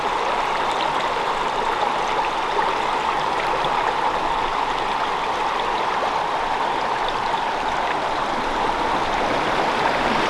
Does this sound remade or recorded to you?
recorded